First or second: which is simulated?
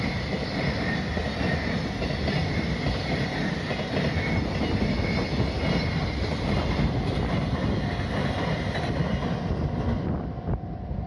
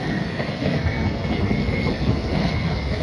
second